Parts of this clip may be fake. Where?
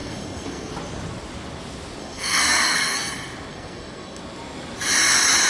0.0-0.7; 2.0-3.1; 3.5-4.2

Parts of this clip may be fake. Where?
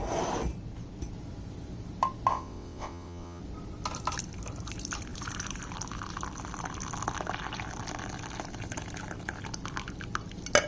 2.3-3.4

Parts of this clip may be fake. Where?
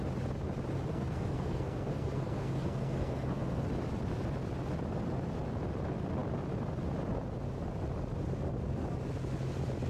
0.9-3.6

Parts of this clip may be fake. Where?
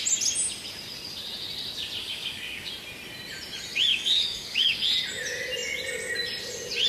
2.0-2.7; 3.9-4.8